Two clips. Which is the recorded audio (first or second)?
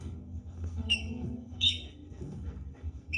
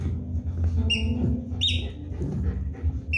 second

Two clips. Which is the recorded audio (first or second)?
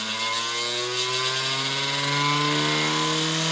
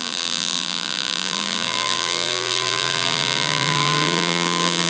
first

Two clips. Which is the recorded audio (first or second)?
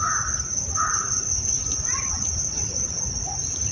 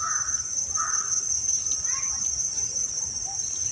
second